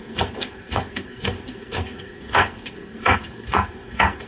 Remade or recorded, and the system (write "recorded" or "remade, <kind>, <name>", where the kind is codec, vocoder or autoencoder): remade, codec, SNAC